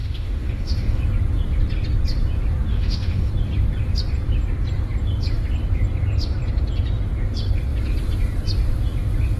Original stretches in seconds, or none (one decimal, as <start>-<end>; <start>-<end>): 1.0-2.7; 3.3-9.4